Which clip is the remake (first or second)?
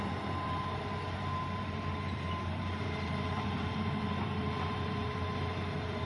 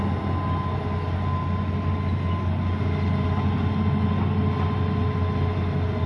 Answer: first